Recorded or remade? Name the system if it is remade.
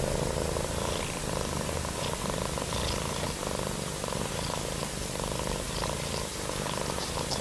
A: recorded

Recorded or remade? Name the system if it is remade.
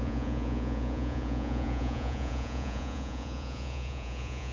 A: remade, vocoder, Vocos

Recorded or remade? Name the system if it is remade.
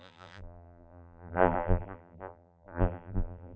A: remade, vocoder, BigVGAN v2